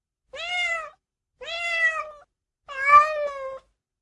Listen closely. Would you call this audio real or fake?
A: real